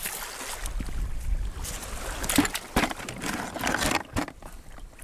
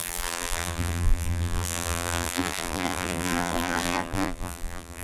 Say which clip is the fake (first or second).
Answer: second